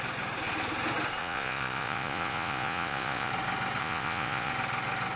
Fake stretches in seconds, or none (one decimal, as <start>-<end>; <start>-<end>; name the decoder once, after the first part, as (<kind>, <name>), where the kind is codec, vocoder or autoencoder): 1.2-3.3 (vocoder, Vocos); 3.8-4.5